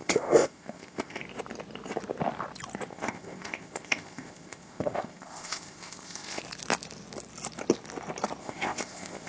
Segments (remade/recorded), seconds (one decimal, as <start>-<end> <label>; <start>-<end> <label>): 0.0-1.2 remade; 1.2-2.9 recorded; 2.9-6.4 remade; 6.4-8.4 recorded; 8.4-9.3 remade